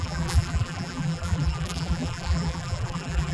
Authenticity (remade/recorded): remade